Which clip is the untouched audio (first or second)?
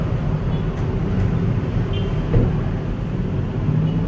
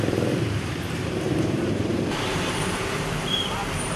first